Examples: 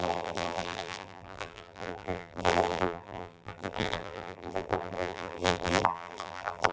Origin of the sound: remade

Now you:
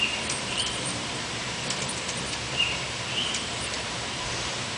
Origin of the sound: remade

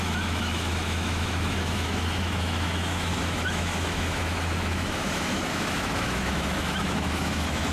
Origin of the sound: remade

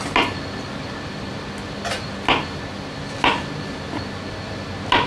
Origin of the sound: recorded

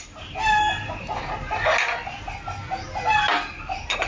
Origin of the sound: recorded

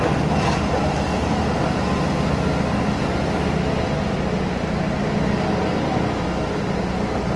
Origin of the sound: recorded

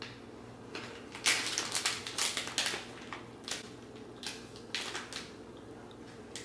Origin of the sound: recorded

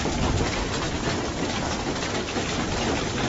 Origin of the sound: recorded